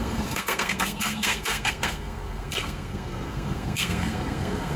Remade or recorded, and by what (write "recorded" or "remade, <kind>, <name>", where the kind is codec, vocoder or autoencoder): remade, codec, SNAC